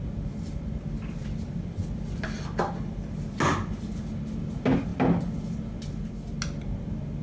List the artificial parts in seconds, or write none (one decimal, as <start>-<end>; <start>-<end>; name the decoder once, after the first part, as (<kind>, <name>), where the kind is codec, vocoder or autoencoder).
none